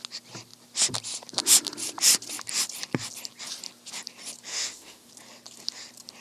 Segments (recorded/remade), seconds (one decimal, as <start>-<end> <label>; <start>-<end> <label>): 0.0-4.5 recorded; 4.5-5.1 remade; 5.1-6.2 recorded